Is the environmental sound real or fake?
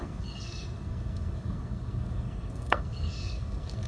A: fake